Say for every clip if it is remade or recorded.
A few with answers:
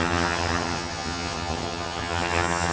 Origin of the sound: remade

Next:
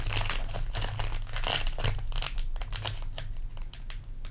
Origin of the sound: recorded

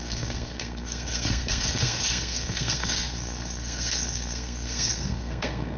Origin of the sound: remade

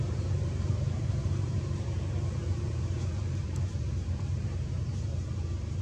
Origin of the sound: remade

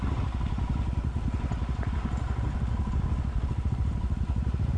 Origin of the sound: recorded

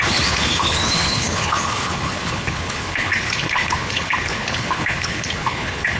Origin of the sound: remade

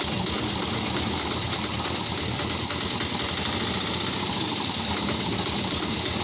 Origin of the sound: remade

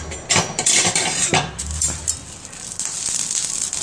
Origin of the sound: recorded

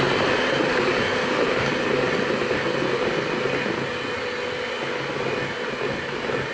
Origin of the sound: recorded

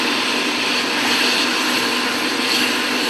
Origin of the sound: recorded